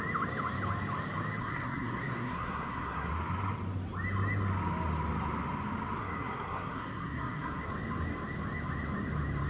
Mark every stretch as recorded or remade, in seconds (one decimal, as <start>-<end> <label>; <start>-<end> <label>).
0.0-1.4 recorded; 1.4-3.1 remade; 3.1-6.0 recorded; 6.0-7.7 remade; 7.7-9.5 recorded